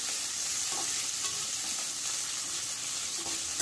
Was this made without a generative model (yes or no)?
yes